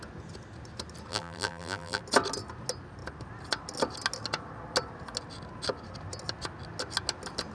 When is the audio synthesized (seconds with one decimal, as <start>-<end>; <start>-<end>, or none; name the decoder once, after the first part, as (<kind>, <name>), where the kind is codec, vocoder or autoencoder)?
1.1-2.0 (vocoder, BigVGAN v2)